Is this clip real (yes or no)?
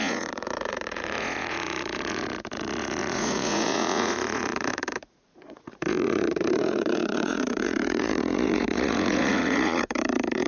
no